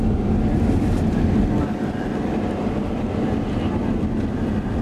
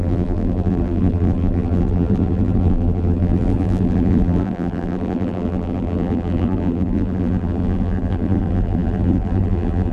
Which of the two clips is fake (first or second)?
second